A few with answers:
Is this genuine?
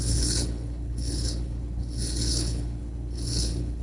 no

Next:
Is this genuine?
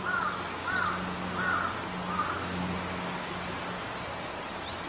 yes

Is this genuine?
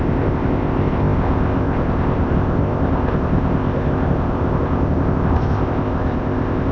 no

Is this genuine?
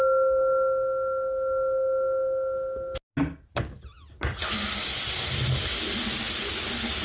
yes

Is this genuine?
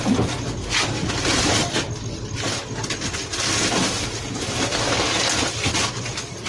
yes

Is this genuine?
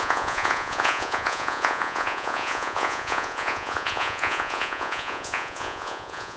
no